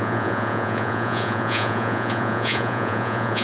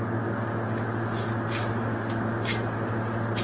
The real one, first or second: second